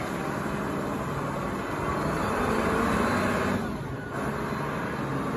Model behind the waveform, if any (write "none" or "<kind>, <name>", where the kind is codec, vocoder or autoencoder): none